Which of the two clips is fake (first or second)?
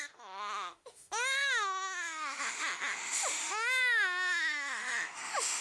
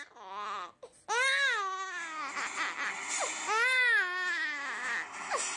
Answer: first